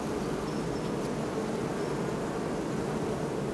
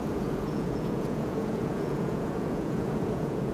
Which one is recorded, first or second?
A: first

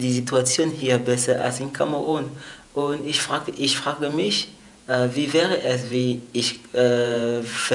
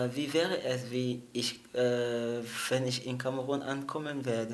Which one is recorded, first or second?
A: second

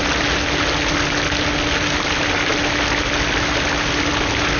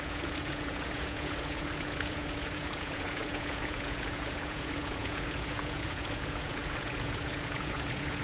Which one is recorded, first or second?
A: first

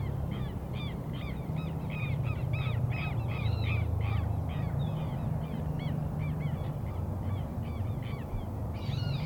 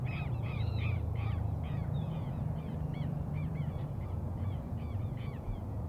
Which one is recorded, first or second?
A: first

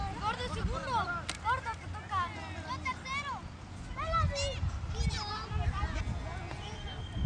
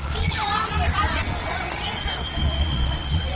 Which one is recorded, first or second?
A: first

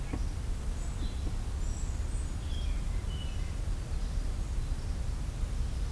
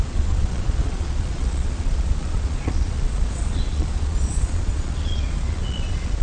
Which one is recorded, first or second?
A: first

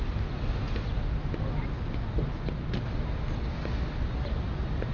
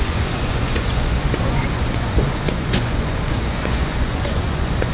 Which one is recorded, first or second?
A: first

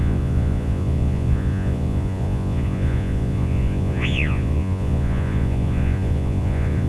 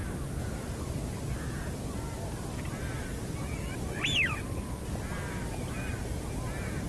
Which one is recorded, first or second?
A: second